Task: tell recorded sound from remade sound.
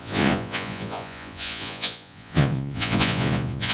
remade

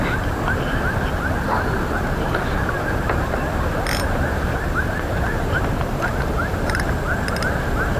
recorded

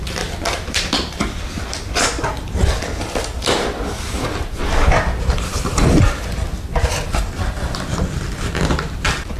remade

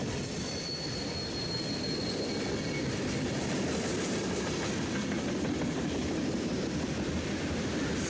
remade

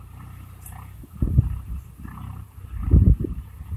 recorded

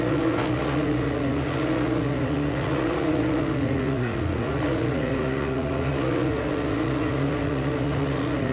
remade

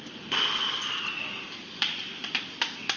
recorded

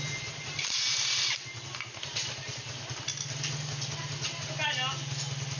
recorded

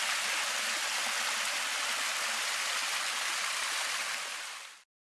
recorded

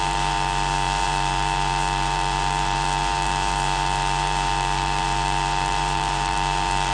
remade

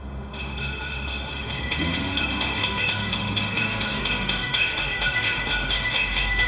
remade